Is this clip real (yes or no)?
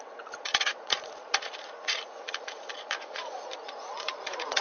no